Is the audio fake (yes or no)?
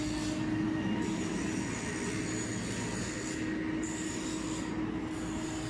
no